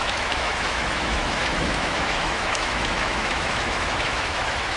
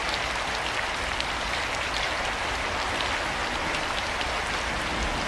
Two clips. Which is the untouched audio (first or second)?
second